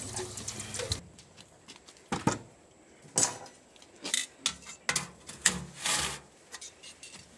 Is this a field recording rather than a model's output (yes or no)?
yes